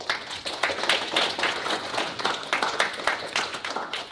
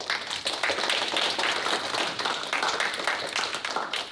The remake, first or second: first